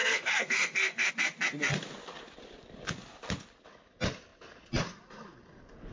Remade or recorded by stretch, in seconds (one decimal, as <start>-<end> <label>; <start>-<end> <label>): 0.0-1.1 remade; 1.1-5.9 recorded